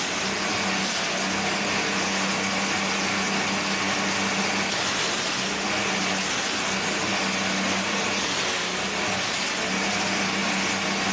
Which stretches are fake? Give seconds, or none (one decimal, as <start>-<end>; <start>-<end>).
none